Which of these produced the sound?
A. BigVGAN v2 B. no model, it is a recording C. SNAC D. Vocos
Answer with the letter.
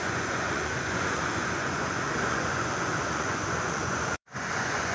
D